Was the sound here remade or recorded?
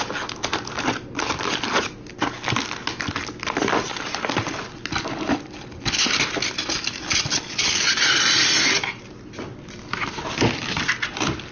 recorded